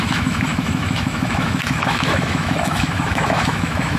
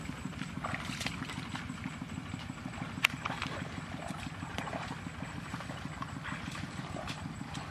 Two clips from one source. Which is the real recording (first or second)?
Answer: second